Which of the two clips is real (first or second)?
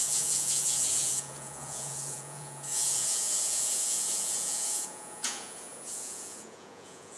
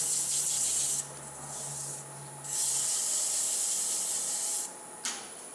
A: second